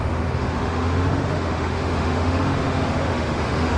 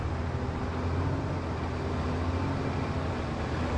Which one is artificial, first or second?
first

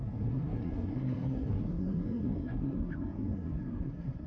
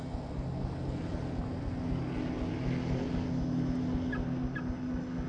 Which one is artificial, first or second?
first